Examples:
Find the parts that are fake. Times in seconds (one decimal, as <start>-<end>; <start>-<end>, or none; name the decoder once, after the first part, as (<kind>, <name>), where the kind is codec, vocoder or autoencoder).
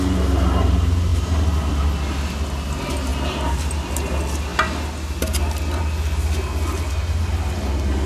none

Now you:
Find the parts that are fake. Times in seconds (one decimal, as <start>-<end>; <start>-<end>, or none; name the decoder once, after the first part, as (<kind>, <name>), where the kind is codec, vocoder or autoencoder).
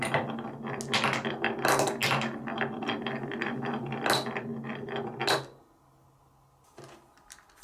none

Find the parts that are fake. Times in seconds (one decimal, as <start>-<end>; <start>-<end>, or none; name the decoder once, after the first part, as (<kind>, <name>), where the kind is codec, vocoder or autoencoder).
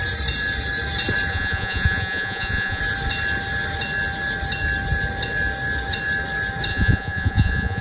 1.3-2.8 (vocoder, Vocos); 6.7-7.8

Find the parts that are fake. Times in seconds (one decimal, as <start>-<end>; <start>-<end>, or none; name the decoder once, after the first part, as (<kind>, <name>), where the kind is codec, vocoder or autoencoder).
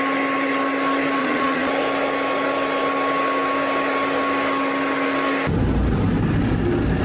1.2-1.7 (vocoder, Vocos)